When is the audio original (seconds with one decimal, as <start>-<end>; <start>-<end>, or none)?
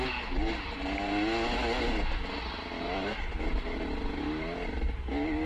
0.0-2.5; 5.0-5.5